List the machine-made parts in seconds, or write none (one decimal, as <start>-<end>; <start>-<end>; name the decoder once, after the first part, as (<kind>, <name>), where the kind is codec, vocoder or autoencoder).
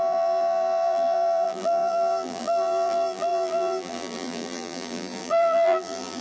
0.0-6.2 (vocoder, BigVGAN v2)